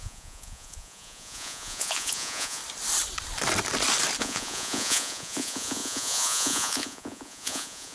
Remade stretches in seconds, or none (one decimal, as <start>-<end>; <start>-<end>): 0.0-2.6; 4.2-7.9